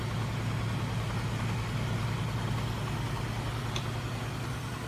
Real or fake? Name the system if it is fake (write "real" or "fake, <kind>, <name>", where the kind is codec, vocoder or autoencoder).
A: real